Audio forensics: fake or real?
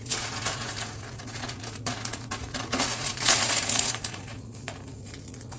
fake